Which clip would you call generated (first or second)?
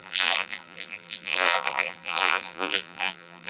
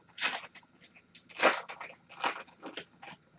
first